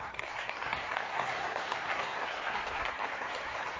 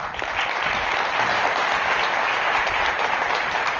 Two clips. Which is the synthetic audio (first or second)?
first